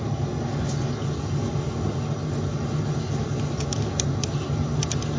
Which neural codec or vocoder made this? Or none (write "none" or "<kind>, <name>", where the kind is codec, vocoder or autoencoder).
none